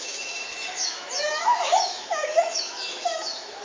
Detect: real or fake fake